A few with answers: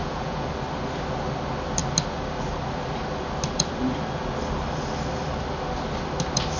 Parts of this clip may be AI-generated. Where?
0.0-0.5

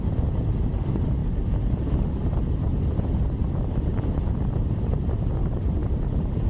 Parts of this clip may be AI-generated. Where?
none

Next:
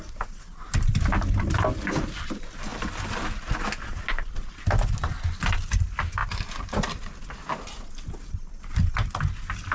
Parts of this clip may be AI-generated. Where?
6.2-7.9